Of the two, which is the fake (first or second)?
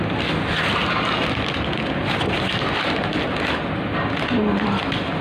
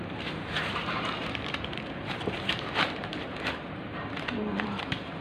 second